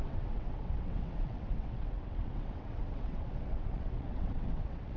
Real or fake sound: fake